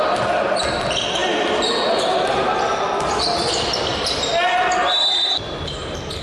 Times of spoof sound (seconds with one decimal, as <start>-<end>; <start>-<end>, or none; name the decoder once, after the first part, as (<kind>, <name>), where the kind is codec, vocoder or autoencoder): none